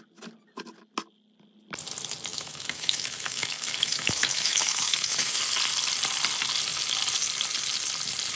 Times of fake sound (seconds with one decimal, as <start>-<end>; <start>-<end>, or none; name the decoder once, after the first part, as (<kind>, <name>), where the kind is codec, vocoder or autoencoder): 2.3-5.4 (autoencoder, DAC-VAE)